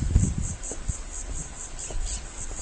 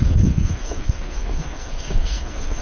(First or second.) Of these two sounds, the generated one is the second